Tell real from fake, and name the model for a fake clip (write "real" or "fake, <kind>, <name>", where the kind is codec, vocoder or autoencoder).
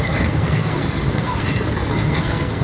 fake, codec, SNAC